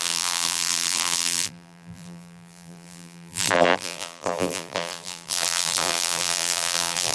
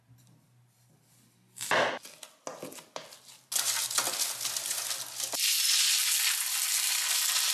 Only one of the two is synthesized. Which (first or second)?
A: first